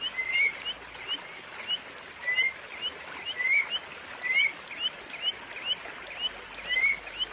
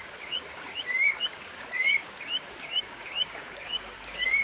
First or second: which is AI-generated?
second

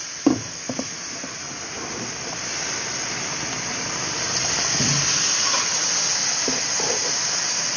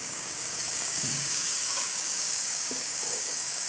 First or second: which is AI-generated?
second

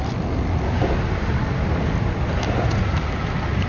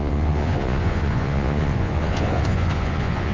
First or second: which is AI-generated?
second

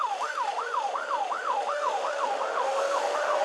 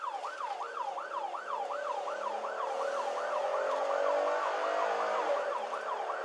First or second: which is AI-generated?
first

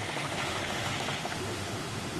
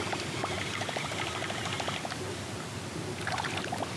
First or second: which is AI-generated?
first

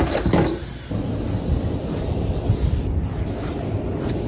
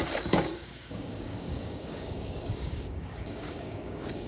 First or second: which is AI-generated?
second